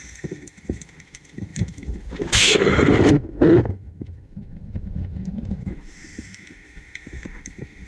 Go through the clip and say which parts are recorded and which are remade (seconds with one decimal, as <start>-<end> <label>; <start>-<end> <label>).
0.0-7.9 remade